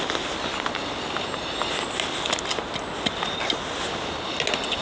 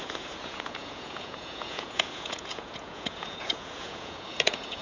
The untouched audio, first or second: first